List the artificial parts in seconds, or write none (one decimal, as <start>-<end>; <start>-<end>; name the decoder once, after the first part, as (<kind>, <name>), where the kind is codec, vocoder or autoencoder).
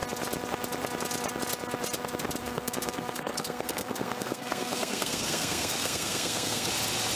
2.4-6.7 (codec, SNAC)